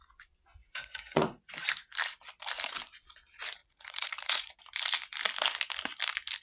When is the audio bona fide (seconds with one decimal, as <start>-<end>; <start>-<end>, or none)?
0.0-0.5; 1.5-3.6; 4.6-6.4